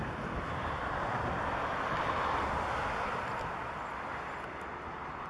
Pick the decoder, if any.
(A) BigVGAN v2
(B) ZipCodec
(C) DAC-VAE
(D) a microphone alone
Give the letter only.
D